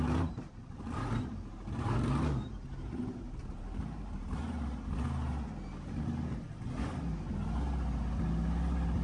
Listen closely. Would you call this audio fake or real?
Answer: real